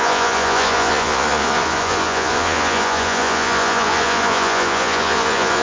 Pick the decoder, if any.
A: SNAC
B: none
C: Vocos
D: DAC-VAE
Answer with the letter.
C